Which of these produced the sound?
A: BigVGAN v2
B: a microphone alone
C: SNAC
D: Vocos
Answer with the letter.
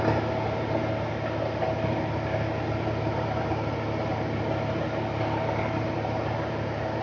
B